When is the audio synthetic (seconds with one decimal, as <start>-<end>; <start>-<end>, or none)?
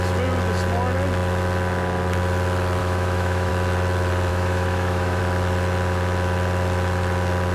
2.8-3.5; 4.3-5.2